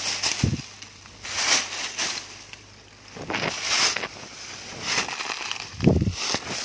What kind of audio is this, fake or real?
real